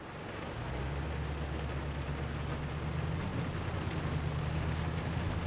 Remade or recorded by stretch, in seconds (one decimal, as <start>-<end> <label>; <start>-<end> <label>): 0.0-5.5 recorded

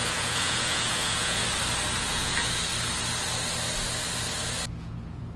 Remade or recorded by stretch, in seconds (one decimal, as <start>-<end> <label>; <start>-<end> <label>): 0.0-1.4 remade; 1.4-2.0 recorded; 2.0-2.7 remade; 2.7-4.8 recorded; 4.8-5.4 remade

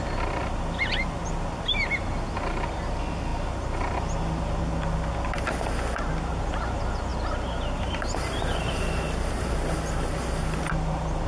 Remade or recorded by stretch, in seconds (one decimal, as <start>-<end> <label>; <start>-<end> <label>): 0.0-11.3 recorded

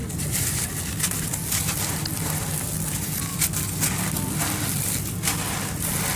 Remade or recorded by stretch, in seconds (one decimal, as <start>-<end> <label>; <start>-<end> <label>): 0.0-6.2 recorded

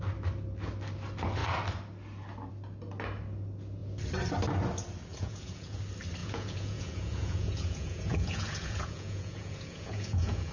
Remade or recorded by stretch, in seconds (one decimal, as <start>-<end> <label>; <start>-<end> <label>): 0.0-5.1 recorded; 5.1-5.8 remade; 5.8-6.2 recorded; 6.2-10.5 remade